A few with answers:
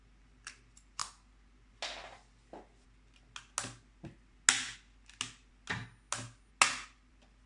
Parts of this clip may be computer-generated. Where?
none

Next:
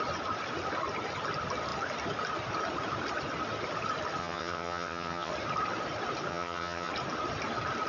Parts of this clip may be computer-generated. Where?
4.2-5.3; 6.3-6.9

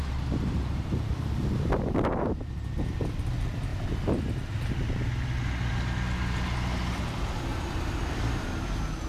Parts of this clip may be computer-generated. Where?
0.6-1.4; 7.5-8.5

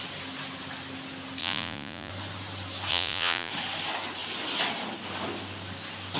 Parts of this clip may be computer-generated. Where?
1.4-2.1; 2.9-3.5